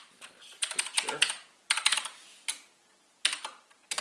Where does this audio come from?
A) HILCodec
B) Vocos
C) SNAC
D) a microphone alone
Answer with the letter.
D